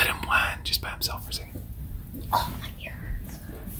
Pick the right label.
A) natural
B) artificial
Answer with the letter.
A